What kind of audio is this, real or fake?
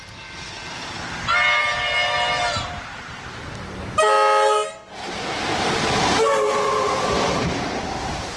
real